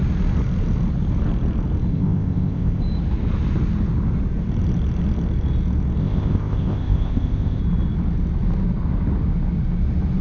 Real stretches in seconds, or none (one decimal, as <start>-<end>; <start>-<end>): 0.0-1.9; 2.8-6.0; 7.6-10.2